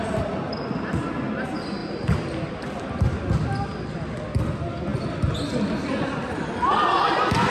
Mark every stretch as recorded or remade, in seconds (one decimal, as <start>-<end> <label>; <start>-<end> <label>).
0.0-7.5 recorded